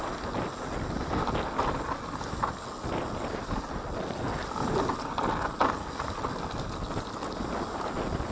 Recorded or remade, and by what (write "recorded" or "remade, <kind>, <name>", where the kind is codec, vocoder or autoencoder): recorded